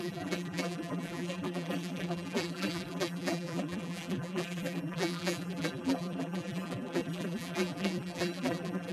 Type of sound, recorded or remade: remade